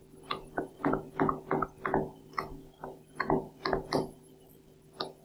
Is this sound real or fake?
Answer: real